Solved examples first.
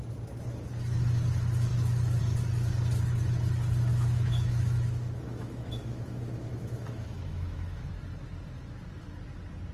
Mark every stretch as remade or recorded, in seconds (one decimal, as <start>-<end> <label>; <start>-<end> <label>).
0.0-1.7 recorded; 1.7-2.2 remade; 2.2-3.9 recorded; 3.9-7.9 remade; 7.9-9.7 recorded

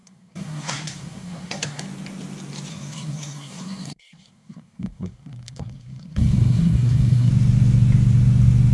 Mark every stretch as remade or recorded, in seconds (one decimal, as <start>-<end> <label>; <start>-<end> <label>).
0.0-1.8 remade; 1.8-2.7 recorded; 2.7-7.3 remade; 7.3-8.7 recorded

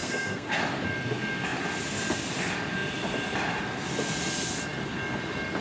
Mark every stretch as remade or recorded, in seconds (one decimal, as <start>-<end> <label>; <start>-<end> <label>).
0.0-0.6 remade; 0.6-5.6 recorded

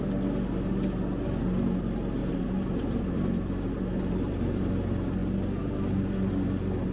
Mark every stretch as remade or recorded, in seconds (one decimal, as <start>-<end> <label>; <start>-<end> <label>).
0.0-2.2 recorded; 2.2-4.7 remade; 4.7-6.9 recorded